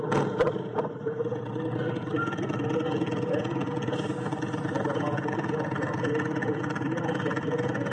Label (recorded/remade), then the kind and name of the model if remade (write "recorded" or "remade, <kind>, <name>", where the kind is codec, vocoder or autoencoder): recorded